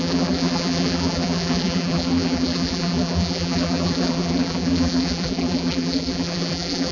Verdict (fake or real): fake